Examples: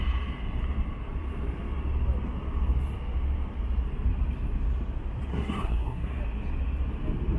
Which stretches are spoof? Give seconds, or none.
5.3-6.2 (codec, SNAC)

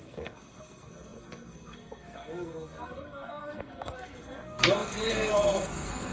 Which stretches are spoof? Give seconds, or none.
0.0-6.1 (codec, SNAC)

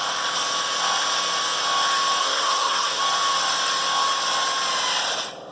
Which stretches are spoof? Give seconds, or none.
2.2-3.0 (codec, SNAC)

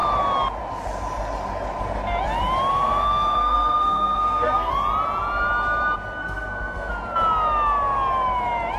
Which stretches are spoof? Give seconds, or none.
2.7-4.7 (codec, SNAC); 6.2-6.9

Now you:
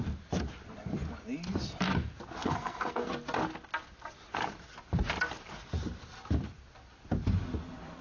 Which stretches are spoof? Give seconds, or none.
2.4-3.1 (codec, SNAC)

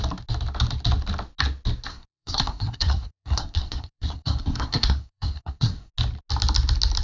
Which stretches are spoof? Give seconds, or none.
1.9-5.9 (codec, SNAC)